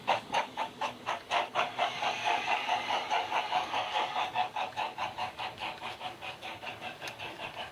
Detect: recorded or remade remade